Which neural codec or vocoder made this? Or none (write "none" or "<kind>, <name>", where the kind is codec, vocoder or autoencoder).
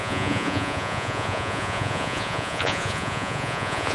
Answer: vocoder, Vocos